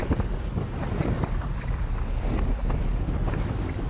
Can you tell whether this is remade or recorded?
recorded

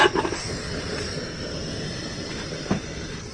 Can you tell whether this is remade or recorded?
recorded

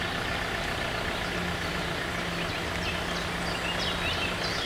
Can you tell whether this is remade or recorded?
recorded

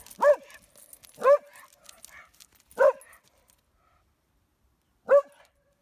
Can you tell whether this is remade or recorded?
recorded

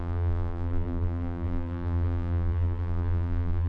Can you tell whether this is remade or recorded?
remade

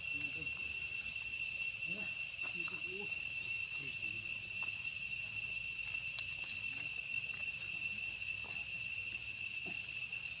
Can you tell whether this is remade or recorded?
recorded